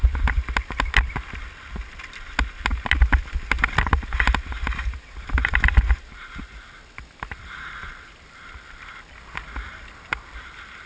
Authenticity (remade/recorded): recorded